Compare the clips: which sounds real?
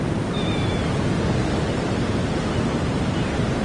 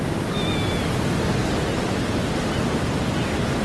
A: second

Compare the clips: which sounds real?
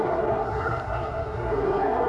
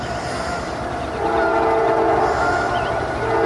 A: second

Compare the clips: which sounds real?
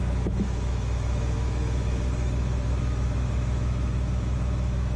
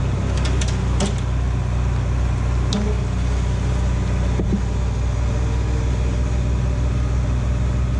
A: second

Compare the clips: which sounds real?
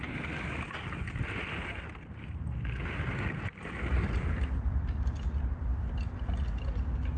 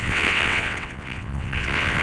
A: first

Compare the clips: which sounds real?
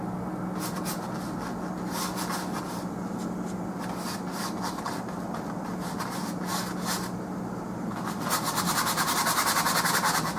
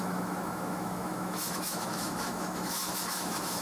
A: first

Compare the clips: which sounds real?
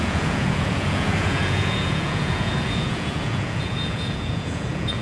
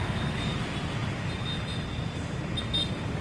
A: second